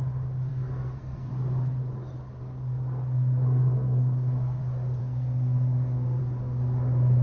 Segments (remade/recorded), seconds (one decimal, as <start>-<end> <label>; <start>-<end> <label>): 0.0-0.5 recorded; 0.5-1.3 remade; 1.3-2.4 recorded; 2.4-4.6 remade; 4.6-5.0 recorded; 5.0-6.2 remade; 6.2-7.2 recorded